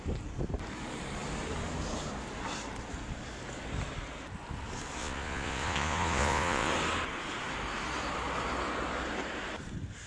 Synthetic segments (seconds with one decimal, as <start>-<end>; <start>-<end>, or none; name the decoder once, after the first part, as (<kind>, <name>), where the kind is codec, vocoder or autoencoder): 5.0-6.7 (vocoder, Vocos)